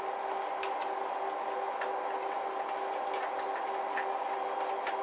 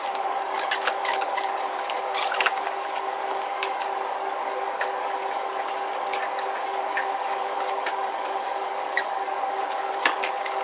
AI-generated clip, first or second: second